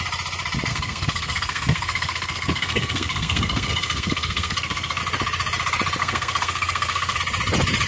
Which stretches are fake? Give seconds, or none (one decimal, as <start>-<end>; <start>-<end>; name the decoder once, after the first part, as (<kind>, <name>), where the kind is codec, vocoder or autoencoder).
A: 0.7-5.0 (codec, SNAC); 6.0-7.2